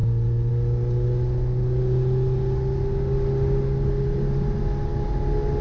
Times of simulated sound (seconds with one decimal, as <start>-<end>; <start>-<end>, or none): none